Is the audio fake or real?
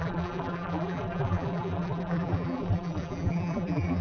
fake